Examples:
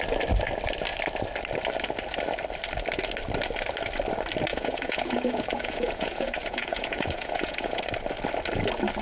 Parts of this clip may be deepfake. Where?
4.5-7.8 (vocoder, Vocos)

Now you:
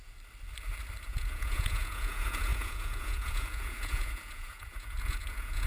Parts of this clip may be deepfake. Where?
1.0-5.7 (vocoder, Vocos)